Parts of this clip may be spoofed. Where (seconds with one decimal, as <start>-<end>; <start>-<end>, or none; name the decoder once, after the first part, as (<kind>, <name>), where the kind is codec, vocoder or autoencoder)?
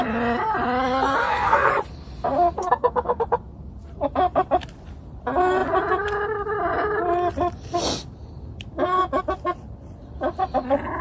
1.2-1.7 (codec, SNAC); 2.6-3.2